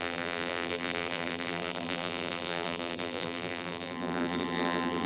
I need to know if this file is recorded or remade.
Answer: remade